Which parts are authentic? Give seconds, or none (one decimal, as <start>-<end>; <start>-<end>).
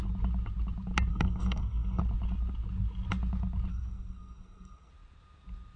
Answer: 0.0-1.1; 2.0-3.7; 4.9-5.8